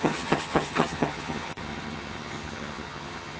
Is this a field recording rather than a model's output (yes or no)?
no